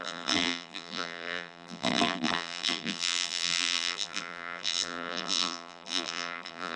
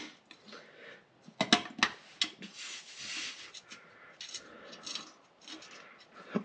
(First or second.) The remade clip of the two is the first